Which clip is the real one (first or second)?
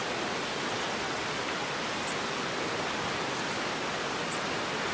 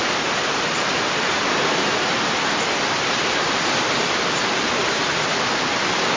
first